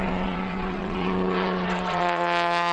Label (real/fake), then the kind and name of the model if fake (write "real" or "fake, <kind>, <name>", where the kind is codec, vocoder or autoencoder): fake, vocoder, WaveNeXt